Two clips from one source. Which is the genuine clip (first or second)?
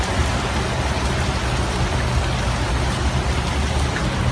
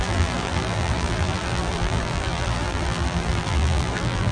first